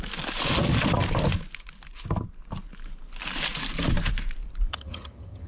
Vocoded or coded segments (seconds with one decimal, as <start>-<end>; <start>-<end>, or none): 4.7-5.5

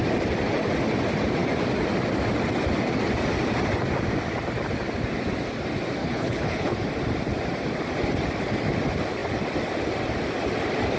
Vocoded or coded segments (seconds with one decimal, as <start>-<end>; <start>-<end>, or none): 6.0-6.7

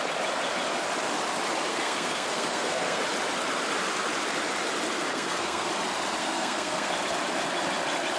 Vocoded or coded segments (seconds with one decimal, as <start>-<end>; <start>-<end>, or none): 1.7-3.0; 5.1-5.7; 6.2-6.9

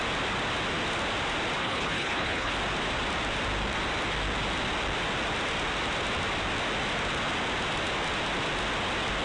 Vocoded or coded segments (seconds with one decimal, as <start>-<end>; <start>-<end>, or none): 1.6-2.5

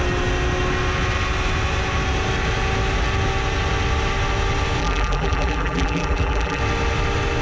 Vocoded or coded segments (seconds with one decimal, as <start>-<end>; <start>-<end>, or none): 4.8-6.6

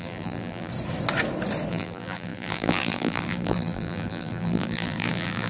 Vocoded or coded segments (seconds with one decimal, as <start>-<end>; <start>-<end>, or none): 0.0-0.7; 1.7-5.5

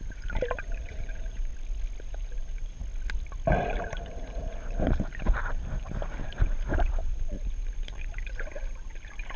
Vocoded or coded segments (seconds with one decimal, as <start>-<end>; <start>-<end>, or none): 0.0-1.5; 2.0-2.8; 3.7-9.4

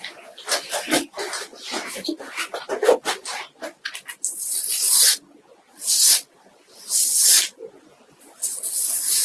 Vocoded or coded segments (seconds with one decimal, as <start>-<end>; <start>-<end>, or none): 1.5-2.6; 6.0-7.6